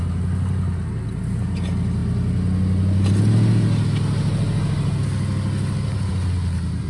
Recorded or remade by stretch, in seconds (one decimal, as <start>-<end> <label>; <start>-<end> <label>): 0.0-6.9 recorded